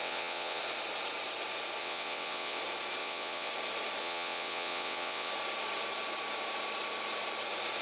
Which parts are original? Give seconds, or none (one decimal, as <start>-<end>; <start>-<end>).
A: 0.6-1.8; 2.6-3.0; 3.5-4.0; 5.3-7.8